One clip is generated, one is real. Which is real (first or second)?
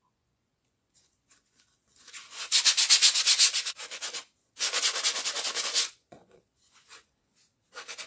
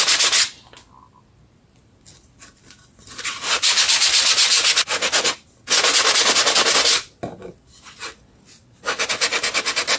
second